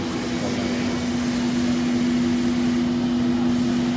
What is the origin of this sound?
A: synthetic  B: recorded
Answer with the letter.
B